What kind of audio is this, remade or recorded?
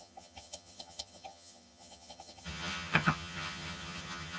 remade